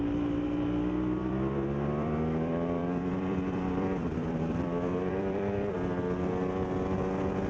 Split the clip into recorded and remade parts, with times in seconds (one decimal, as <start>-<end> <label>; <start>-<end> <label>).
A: 0.0-1.2 recorded; 1.2-5.7 remade; 5.7-7.5 recorded